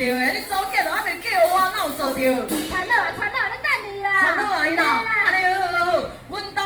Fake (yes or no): yes